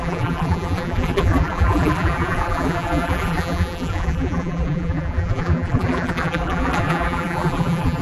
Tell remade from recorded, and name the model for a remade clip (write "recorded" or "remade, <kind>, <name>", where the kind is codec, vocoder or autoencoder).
remade, vocoder, BigVGAN v2